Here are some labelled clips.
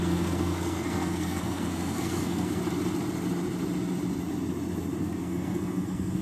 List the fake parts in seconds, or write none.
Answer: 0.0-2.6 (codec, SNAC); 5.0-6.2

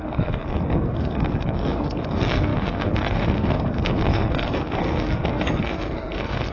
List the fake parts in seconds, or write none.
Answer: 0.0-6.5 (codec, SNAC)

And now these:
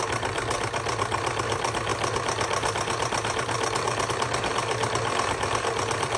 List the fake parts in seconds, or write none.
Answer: none

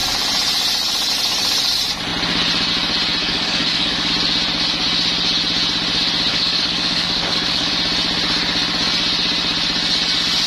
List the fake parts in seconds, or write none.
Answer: 3.2-4.1 (codec, DAC); 6.3-7.7

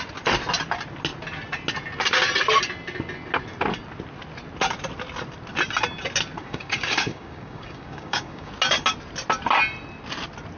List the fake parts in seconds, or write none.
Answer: 6.4-8.5 (codec, DAC)

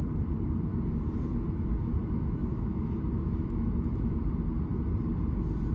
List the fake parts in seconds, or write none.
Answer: 0.7-4.1 (autoencoder, DAC-VAE)

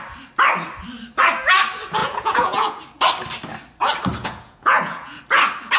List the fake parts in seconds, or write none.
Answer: 2.0-2.8 (vocoder, Vocos); 4.2-5.2